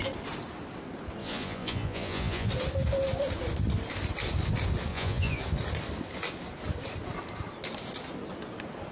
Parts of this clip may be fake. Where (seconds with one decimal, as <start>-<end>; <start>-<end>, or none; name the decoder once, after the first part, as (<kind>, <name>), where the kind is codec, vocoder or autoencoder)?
1.2-2.5 (vocoder, Vocos); 4.9-5.4